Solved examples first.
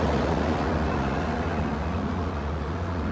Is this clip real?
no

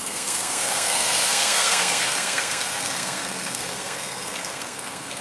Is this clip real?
no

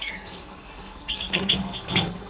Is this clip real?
no